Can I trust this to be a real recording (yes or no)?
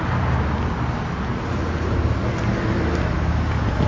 yes